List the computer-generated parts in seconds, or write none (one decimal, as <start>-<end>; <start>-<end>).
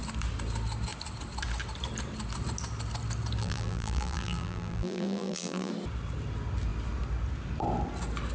3.4-5.7